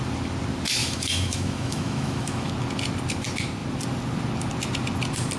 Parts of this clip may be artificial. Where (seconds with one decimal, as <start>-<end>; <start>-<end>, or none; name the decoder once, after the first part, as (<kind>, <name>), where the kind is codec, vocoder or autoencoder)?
0.8-2.5 (autoencoder, DAC-VAE)